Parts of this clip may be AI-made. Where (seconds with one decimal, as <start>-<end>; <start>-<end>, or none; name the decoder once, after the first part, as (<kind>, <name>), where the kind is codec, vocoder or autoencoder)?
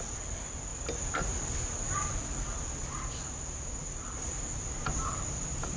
none